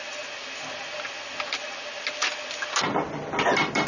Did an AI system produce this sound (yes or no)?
no